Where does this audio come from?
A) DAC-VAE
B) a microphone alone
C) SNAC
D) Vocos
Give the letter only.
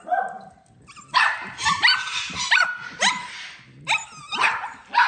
B